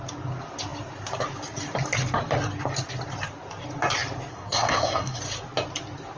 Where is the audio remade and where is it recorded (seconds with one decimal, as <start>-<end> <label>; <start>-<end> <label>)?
0.0-4.3 recorded; 4.3-5.2 remade; 5.2-6.2 recorded